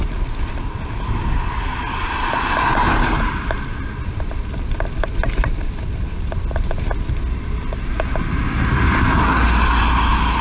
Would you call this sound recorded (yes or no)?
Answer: yes